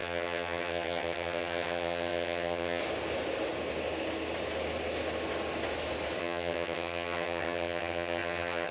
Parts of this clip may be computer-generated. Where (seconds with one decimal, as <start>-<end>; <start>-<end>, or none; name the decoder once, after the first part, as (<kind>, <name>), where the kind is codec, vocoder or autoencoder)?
0.0-2.8 (vocoder, HiFi-GAN); 6.2-8.7

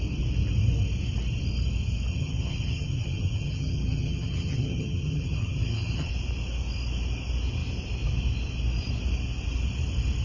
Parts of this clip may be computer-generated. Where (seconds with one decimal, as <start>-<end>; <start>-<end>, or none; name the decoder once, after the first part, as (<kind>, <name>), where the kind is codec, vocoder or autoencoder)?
2.1-6.1 (vocoder, HiFi-GAN)